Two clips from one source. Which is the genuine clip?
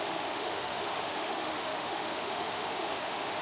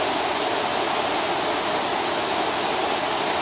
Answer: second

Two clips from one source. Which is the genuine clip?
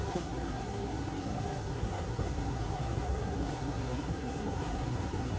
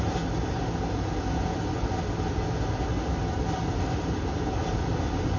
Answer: second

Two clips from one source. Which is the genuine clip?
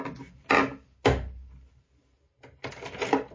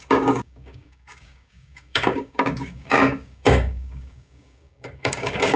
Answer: first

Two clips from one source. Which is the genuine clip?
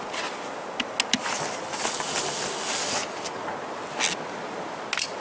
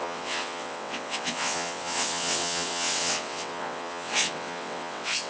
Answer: first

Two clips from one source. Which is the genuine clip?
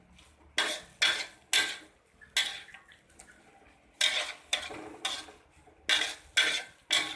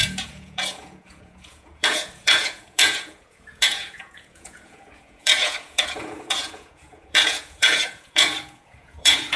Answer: first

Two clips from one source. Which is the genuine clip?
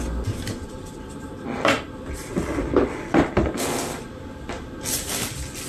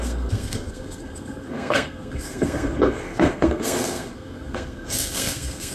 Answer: first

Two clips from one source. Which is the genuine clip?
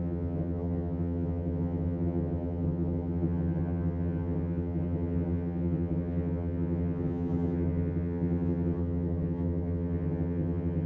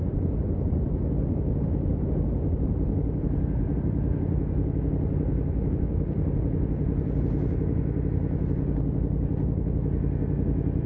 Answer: second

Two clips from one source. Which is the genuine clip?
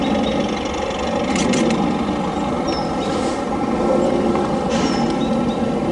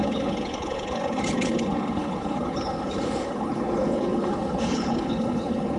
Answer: first